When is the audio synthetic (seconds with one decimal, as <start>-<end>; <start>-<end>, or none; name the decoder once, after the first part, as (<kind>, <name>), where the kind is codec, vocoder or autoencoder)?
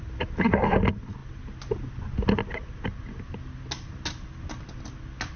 none